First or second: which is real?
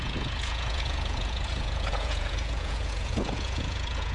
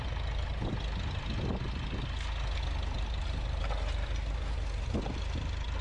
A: second